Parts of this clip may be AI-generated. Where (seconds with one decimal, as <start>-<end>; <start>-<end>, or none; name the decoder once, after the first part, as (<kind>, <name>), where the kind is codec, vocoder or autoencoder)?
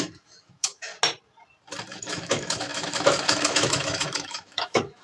0.0-0.9 (autoencoder, DAC-VAE); 1.9-5.0